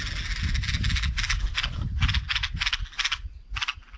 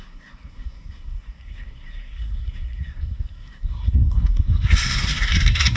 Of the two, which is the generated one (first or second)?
second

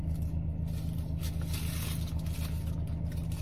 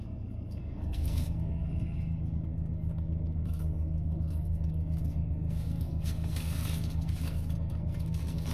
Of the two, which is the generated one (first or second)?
second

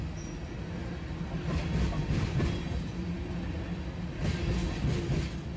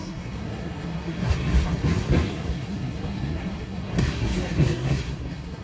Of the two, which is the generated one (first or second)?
second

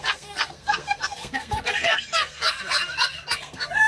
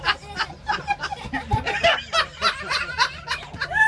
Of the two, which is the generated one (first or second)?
first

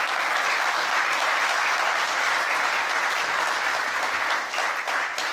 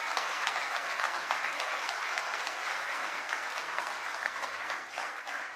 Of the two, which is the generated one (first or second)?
second